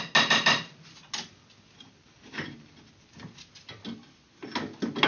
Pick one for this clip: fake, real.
real